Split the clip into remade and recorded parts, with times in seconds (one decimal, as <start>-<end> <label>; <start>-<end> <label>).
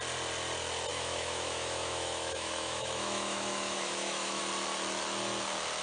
0.0-0.9 recorded; 0.9-4.4 remade; 4.4-5.8 recorded